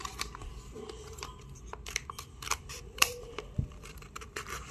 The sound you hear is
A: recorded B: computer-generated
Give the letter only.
B